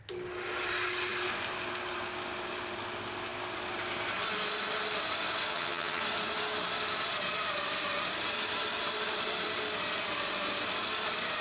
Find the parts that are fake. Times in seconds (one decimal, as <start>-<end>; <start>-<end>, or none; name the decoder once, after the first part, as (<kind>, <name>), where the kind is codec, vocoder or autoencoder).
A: 5.5-6.0 (vocoder, HiFi-GAN)